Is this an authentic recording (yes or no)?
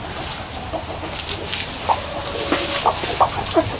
yes